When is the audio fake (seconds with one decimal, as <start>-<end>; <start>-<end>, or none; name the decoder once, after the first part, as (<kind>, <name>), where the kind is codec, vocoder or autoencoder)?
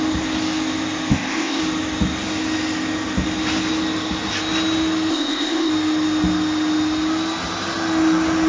1.1-1.6 (codec, ZipCodec); 5.1-5.7